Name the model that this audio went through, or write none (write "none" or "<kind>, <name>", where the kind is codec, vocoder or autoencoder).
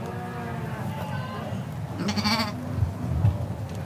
none